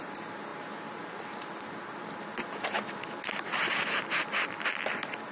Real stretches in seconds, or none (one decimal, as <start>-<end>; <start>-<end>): 0.0-5.3